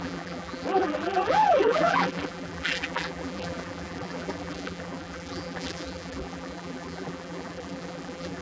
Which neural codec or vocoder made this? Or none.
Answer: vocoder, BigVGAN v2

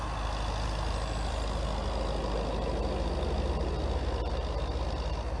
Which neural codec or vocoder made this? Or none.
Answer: none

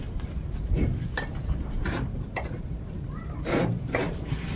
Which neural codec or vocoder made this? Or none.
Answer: vocoder, BigVGAN v2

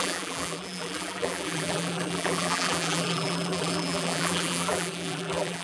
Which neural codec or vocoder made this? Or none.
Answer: vocoder, BigVGAN v2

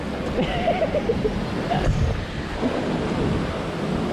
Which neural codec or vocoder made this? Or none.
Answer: none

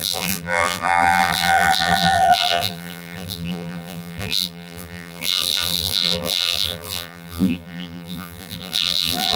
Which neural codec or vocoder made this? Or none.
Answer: vocoder, BigVGAN v2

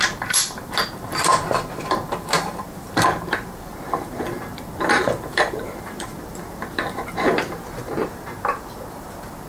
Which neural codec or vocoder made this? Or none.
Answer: vocoder, BigVGAN v2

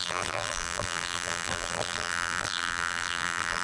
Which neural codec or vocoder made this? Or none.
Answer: vocoder, BigVGAN v2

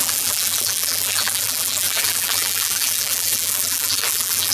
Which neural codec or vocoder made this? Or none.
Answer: vocoder, BigVGAN v2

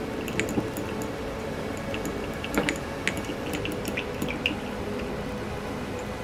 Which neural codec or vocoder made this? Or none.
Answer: none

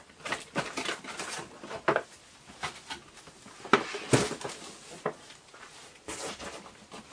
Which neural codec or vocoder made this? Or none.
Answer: vocoder, BigVGAN v2